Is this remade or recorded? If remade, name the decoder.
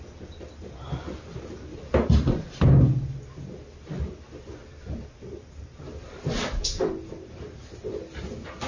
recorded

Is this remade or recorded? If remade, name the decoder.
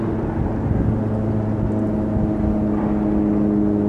recorded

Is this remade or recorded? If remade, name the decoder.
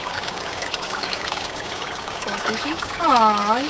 remade, codec, DAC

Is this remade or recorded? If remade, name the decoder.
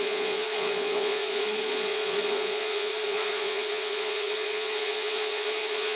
remade, vocoder, Vocos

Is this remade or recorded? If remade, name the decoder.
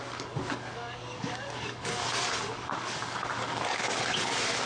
remade, codec, DAC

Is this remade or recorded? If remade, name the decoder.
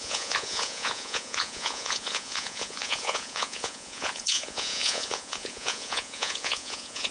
remade, vocoder, Vocos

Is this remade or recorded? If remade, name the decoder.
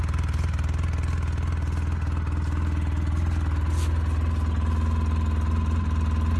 recorded